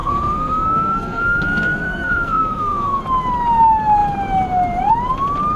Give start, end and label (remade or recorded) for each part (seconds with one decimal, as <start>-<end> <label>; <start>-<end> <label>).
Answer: 0.0-3.0 remade; 3.0-5.6 recorded